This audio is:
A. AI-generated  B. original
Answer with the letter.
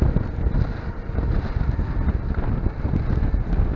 B